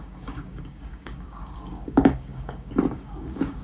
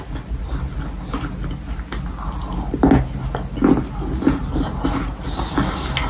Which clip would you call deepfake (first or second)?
first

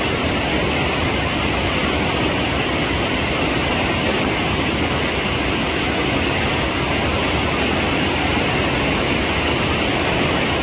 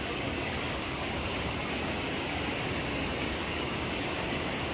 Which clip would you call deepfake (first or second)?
second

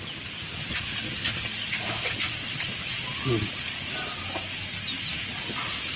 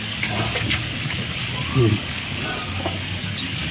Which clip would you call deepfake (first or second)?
second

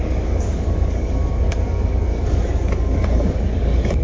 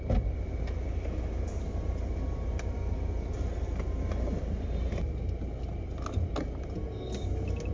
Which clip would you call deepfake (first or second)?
first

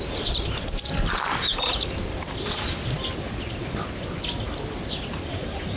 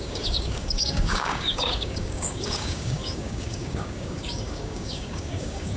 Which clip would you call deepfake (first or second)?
second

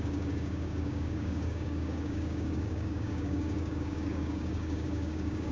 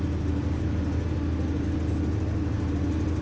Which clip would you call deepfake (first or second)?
first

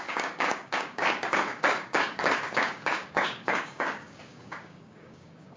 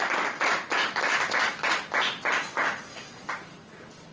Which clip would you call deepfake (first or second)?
first